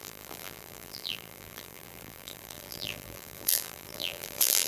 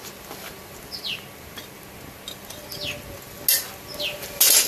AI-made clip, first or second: first